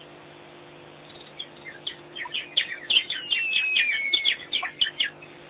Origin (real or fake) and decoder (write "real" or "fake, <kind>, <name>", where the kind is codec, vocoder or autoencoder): real